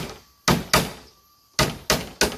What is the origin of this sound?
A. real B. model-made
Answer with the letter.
A